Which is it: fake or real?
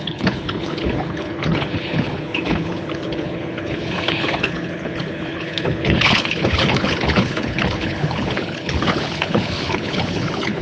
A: fake